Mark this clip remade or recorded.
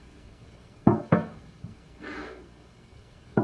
remade